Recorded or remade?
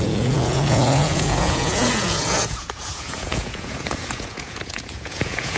remade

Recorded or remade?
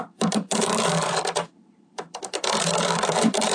remade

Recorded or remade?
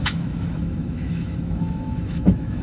remade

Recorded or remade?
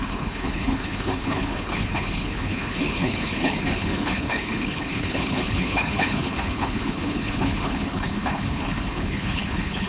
remade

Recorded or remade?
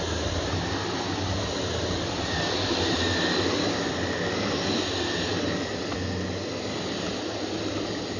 recorded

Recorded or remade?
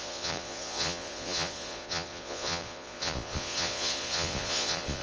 remade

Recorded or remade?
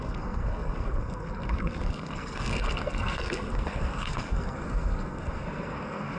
remade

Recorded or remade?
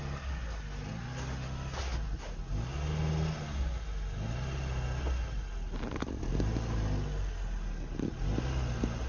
recorded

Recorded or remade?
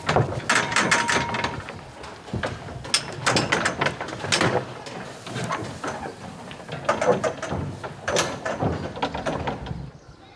recorded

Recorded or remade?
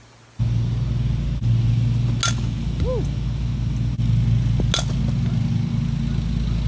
recorded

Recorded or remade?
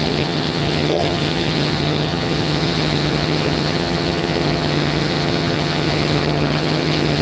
remade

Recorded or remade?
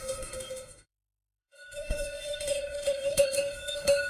remade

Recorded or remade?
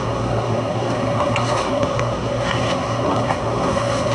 remade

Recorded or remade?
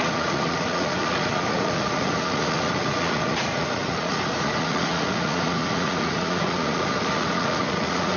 remade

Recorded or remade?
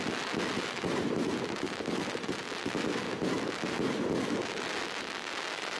recorded